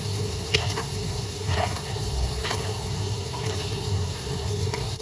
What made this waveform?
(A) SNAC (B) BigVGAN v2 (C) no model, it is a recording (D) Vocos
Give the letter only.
A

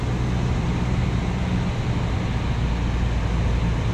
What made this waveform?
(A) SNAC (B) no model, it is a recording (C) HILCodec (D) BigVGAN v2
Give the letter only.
B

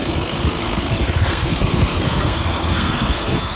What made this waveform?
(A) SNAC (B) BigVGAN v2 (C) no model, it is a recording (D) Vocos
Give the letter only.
A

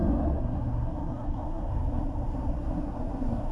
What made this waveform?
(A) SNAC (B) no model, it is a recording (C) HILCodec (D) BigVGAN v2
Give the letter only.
A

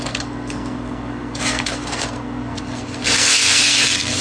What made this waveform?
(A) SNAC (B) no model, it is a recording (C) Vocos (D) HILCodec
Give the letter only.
A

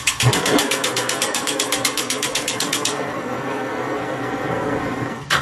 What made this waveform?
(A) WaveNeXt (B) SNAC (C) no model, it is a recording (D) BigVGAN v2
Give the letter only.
B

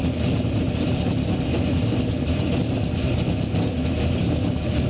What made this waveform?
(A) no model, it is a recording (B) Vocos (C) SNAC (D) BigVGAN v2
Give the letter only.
A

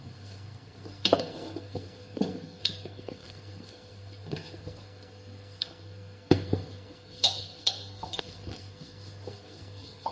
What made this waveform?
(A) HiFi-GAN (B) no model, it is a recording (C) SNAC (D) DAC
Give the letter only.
C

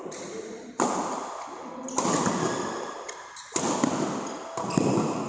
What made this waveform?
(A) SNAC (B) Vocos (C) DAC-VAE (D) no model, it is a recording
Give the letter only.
D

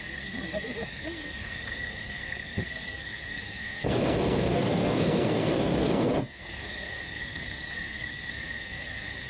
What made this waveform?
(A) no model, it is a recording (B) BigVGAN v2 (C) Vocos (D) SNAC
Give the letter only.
D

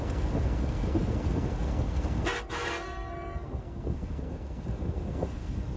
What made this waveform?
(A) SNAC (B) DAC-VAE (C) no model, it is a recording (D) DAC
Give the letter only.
A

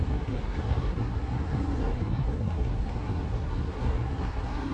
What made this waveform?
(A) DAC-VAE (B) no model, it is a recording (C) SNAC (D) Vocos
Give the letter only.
C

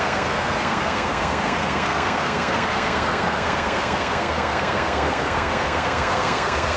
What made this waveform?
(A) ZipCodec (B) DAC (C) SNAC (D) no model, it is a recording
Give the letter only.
C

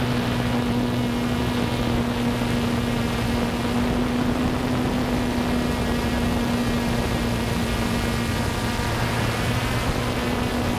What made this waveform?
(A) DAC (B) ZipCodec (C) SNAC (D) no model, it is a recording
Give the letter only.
D